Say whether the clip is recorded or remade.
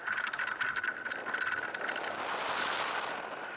recorded